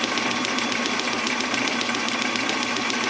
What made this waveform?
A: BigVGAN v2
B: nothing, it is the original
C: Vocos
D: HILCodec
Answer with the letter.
B